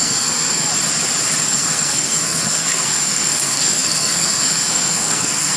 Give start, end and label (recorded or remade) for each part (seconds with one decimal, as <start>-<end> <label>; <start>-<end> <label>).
0.0-0.7 remade; 0.7-1.4 recorded; 1.4-5.6 remade